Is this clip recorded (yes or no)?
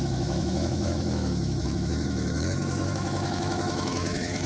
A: no